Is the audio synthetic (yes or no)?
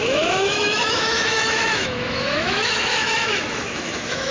yes